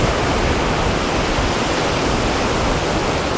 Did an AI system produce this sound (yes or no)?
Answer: no